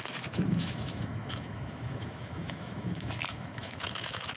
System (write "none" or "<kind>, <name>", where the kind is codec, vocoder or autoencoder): autoencoder, DAC-VAE